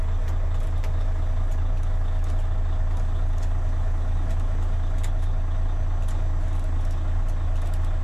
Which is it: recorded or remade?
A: recorded